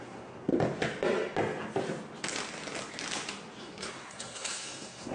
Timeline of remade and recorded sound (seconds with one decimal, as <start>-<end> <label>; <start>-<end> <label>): 0.0-0.5 remade; 0.5-3.6 recorded; 3.6-5.1 remade